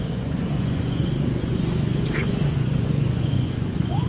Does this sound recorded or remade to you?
remade